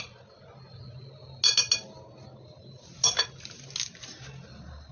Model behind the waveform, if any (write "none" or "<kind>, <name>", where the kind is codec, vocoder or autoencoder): none